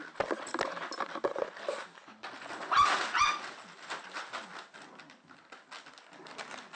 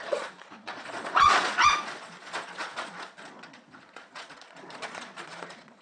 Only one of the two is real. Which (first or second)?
first